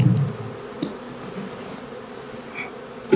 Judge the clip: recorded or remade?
recorded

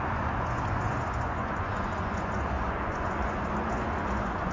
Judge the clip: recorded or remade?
remade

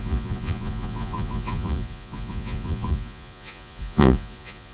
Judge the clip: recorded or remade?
remade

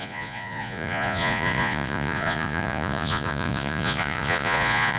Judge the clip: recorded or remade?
remade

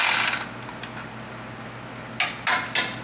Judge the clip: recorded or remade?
recorded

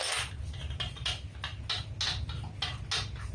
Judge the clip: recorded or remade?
recorded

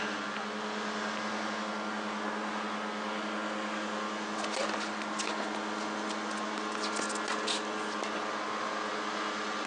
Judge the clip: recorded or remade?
recorded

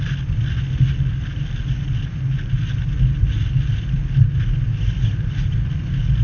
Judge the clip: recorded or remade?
recorded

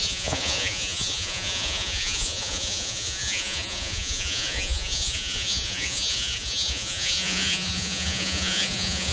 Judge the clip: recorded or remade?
remade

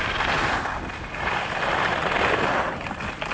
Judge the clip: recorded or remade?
recorded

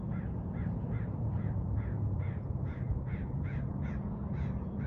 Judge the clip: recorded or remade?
remade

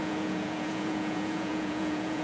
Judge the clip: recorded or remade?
remade